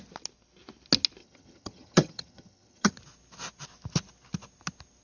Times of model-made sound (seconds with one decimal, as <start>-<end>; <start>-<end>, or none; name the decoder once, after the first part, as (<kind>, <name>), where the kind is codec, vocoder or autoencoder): 1.2-2.9 (vocoder, HiFi-GAN)

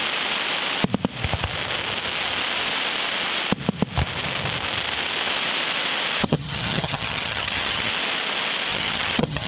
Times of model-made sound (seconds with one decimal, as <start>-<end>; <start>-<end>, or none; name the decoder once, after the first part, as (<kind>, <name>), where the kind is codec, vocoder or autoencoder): 6.2-7.9 (vocoder, HiFi-GAN); 8.7-9.5